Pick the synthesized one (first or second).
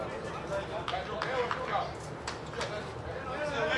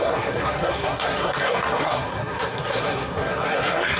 second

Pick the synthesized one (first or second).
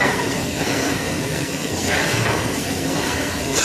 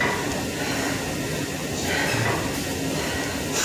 first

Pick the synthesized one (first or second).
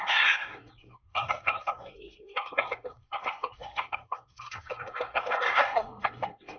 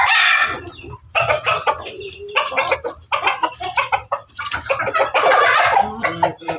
first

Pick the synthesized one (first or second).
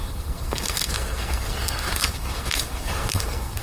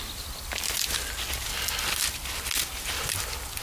first